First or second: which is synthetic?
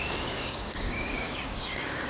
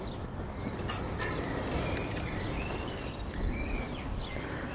first